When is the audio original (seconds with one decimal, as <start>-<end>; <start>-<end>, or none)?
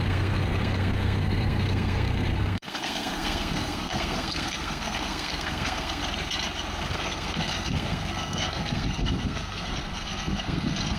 6.0-6.8